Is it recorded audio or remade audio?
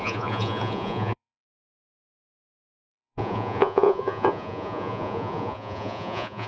remade